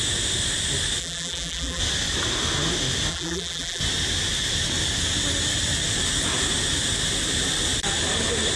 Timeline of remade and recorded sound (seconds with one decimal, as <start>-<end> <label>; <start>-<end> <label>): 0.0-1.0 recorded; 1.0-1.8 remade; 1.8-3.1 recorded; 3.1-3.8 remade; 3.8-8.6 recorded